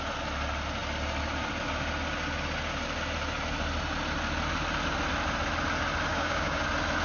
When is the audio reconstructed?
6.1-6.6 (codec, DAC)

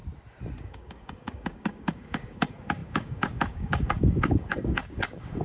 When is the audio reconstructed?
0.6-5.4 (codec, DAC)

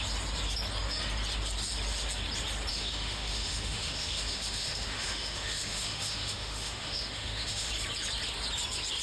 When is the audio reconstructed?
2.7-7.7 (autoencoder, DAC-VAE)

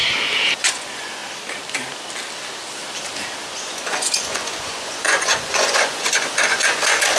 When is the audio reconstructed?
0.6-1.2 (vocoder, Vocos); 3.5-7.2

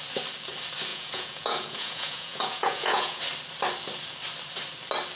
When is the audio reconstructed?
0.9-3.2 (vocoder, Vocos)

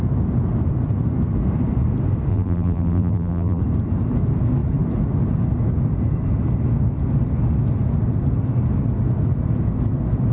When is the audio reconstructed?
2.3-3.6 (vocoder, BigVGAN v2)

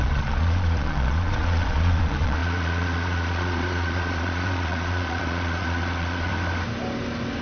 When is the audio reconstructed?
0.0-6.3 (vocoder, Vocos)